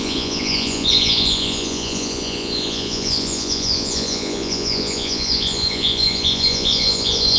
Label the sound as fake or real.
fake